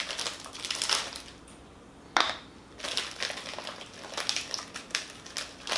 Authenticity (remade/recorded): recorded